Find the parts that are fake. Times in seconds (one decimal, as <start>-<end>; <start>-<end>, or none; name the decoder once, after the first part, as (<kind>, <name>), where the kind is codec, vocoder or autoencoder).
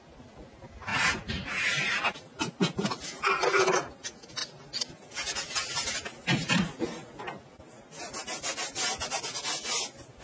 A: 0.9-2.4 (vocoder, BigVGAN v2)